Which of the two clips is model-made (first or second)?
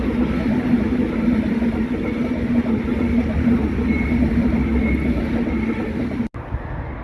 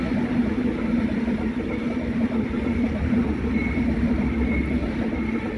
second